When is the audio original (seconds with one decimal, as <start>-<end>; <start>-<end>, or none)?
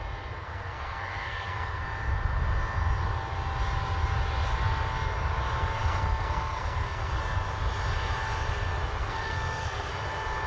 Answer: 0.0-0.4; 1.8-5.6; 7.2-9.0; 9.9-10.5